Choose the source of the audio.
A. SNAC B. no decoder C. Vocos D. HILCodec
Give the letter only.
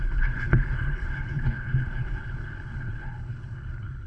D